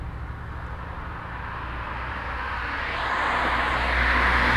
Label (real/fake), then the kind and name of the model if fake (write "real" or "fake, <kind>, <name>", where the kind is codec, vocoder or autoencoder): real